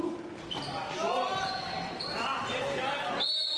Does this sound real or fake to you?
real